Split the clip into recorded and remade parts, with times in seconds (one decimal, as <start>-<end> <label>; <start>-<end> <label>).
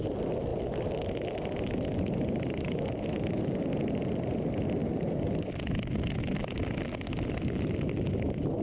0.0-8.6 recorded